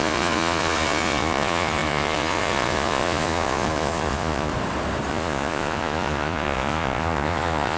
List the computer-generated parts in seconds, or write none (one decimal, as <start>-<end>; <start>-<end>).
0.0-4.5; 5.1-7.8